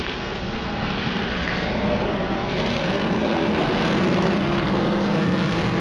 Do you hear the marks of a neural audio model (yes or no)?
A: yes